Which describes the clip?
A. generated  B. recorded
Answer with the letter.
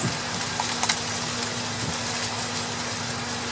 B